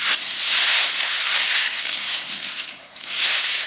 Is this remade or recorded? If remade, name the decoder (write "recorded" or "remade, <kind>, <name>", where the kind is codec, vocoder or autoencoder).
remade, codec, SNAC